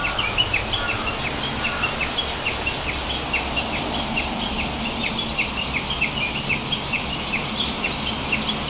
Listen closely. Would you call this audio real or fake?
real